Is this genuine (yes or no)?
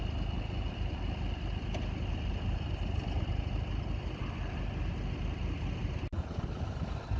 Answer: yes